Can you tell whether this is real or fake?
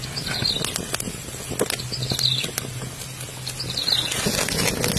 real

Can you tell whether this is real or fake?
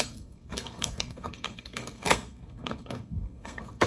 fake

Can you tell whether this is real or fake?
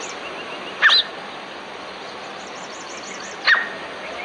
real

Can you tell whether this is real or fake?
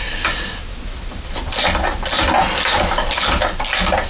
real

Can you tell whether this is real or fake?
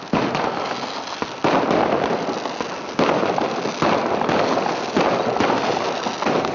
real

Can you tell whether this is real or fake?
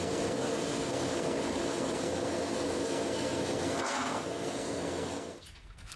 fake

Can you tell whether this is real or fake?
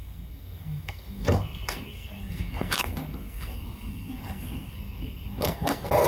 fake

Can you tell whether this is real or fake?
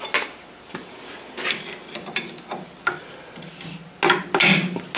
real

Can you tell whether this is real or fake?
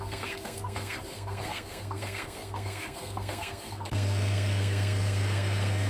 fake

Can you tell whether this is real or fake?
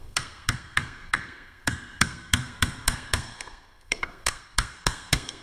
fake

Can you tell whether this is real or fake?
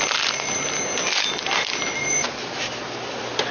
real